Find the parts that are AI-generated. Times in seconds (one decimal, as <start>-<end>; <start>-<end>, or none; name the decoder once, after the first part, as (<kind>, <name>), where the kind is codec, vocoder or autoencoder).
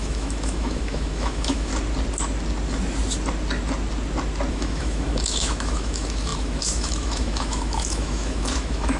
0.0-1.7 (autoencoder, DAC-VAE); 4.5-9.0